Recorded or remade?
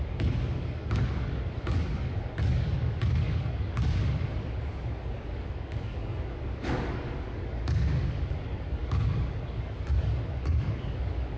remade